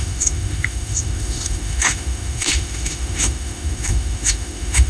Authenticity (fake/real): fake